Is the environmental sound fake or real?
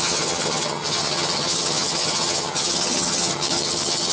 fake